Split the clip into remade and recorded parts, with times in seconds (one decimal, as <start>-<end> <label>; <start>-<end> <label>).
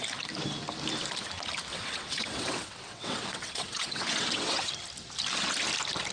0.0-1.7 recorded; 1.7-4.7 remade; 4.7-6.1 recorded